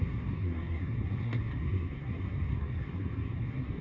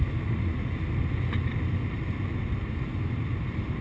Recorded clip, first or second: second